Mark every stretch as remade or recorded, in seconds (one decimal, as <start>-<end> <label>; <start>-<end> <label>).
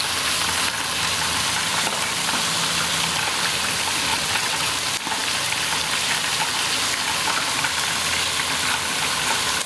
0.0-4.1 recorded; 4.1-4.7 remade; 4.7-9.7 recorded